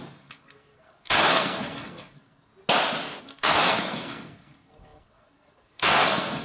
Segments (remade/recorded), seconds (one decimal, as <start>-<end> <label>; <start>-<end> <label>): 0.0-2.5 remade; 2.5-3.2 recorded; 3.2-6.4 remade

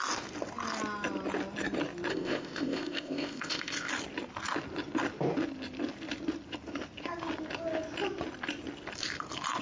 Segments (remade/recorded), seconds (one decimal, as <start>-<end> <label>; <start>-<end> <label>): 0.0-2.1 recorded; 2.1-3.9 remade; 3.9-9.6 recorded

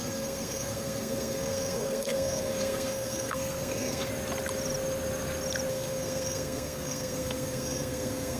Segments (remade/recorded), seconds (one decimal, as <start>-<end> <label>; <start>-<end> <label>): 0.0-4.1 remade; 4.1-5.7 recorded; 5.7-8.4 remade

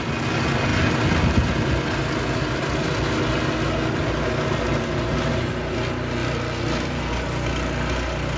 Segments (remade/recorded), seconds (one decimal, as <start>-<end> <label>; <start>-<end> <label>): 0.0-8.4 recorded

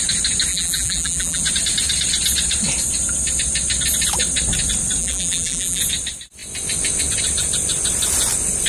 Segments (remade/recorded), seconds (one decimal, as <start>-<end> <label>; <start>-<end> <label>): 0.0-0.5 recorded; 0.5-1.4 remade; 1.4-5.0 recorded; 5.0-5.8 remade; 5.8-8.7 recorded

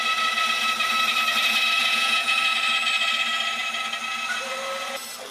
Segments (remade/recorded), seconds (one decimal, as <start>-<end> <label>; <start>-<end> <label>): 0.0-1.8 recorded; 1.8-2.4 remade; 2.4-5.3 recorded

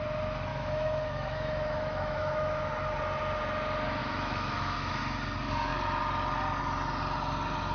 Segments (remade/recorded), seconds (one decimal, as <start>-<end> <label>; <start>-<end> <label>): 0.0-0.5 recorded; 0.5-2.7 remade; 2.7-4.0 recorded; 4.0-5.0 remade; 5.0-7.7 recorded